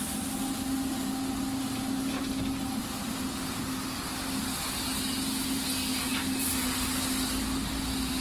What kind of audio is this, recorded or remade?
recorded